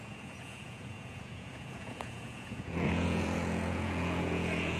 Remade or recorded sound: remade